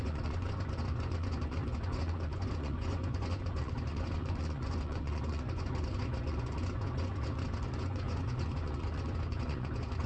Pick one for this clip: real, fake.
fake